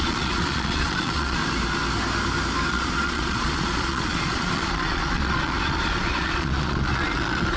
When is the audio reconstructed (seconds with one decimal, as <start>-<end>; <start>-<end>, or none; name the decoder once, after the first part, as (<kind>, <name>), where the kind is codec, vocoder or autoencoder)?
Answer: 0.0-1.4 (vocoder, Vocos); 2.7-7.6